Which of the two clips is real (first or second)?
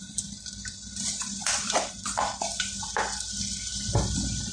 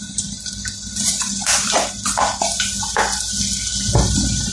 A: second